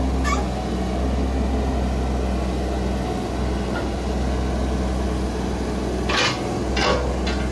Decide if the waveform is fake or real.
real